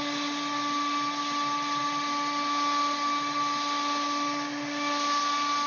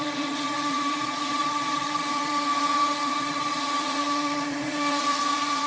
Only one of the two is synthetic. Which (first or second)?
second